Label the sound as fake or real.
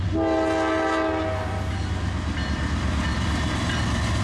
real